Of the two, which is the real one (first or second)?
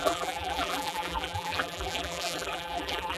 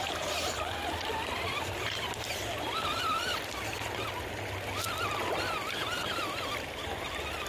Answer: second